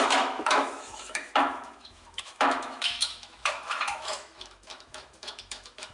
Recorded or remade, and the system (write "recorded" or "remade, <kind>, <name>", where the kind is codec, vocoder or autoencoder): remade, autoencoder, DAC-VAE